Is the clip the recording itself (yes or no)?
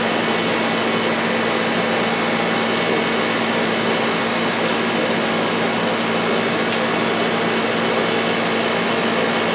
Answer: yes